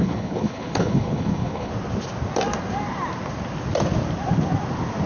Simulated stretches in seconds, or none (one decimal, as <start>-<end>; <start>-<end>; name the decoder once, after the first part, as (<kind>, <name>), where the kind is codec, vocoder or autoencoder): 0.0-1.7 (codec, HILCodec)